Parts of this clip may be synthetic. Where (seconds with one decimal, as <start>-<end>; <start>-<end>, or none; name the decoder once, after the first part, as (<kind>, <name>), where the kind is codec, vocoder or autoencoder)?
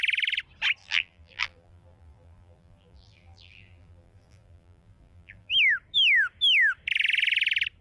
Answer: 0.8-5.5 (vocoder, BigVGAN v2)